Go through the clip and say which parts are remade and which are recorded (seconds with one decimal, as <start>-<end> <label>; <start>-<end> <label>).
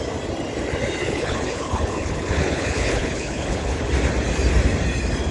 0.0-1.0 recorded; 1.0-3.8 remade; 3.8-5.3 recorded